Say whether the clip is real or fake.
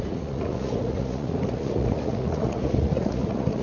fake